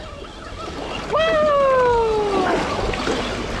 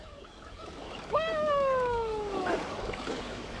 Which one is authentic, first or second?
first